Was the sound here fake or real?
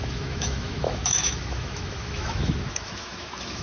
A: fake